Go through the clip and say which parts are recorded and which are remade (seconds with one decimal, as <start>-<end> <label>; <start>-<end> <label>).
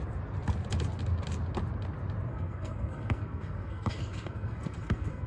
0.0-2.3 recorded; 2.3-5.3 remade